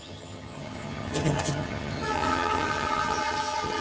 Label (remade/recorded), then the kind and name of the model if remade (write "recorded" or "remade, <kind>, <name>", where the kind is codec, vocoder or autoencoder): remade, vocoder, HiFi-GAN